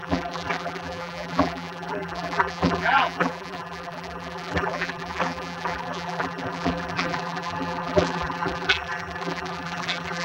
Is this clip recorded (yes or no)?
no